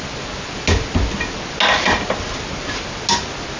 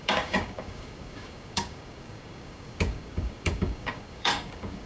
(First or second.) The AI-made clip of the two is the second